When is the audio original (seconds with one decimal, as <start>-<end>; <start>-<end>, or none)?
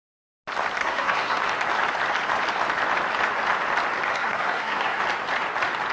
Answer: 0.0-0.8; 1.4-4.1; 5.0-5.9